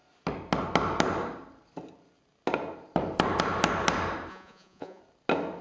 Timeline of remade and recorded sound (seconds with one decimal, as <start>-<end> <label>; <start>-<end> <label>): 0.0-4.3 recorded; 4.3-5.0 remade; 5.0-5.6 recorded